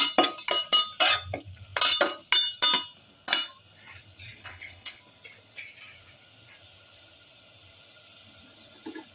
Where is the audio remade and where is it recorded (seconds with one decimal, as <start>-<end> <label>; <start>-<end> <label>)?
0.0-4.4 recorded; 4.4-5.0 remade; 5.0-9.1 recorded